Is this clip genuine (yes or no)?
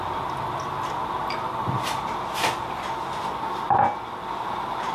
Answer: yes